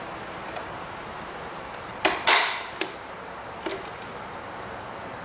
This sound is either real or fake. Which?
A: fake